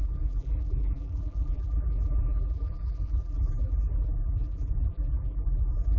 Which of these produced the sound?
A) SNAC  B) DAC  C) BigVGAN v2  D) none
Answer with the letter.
C